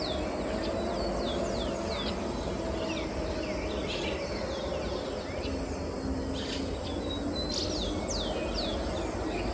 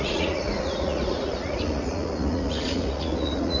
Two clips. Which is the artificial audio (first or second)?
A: second